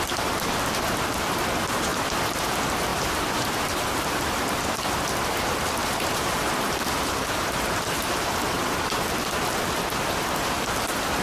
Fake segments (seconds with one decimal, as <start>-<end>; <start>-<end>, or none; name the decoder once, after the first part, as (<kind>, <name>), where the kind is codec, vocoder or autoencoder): 1.9-2.4 (vocoder, BigVGAN v2); 2.9-4.3; 5.8-8.4